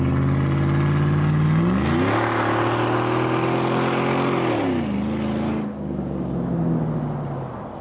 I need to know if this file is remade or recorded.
recorded